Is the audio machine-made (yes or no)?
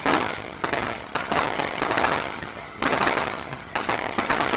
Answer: yes